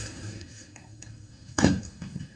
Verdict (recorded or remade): remade